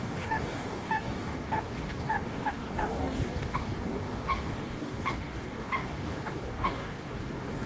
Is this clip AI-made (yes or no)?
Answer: yes